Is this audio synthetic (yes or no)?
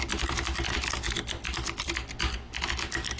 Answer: no